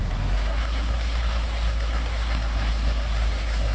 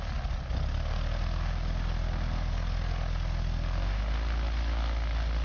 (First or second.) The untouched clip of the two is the second